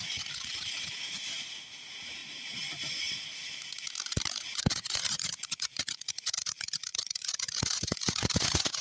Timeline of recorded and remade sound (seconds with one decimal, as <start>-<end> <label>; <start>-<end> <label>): 0.0-2.2 remade; 2.2-4.3 recorded; 4.3-8.8 remade